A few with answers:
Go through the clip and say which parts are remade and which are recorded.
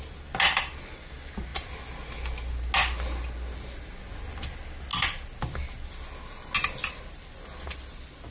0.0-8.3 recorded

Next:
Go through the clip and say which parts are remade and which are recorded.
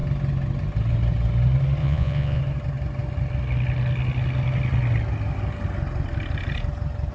0.0-1.8 recorded; 1.8-2.4 remade; 2.4-7.1 recorded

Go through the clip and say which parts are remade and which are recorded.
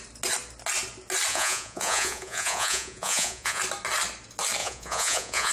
0.0-1.3 recorded; 1.3-3.6 remade; 3.6-4.6 recorded; 4.6-5.5 remade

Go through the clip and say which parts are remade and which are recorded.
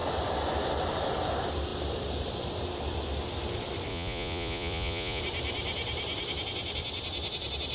0.0-3.9 recorded; 3.9-5.2 remade; 5.2-7.7 recorded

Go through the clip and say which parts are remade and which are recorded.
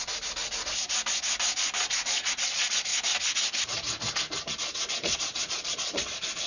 0.0-1.8 recorded; 1.8-2.9 remade; 2.9-4.9 recorded; 4.9-6.5 remade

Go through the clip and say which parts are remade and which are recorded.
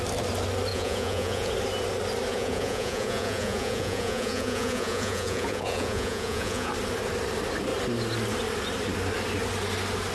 0.0-0.7 recorded; 0.7-1.5 remade; 1.5-2.3 recorded; 2.3-6.7 remade; 6.7-10.1 recorded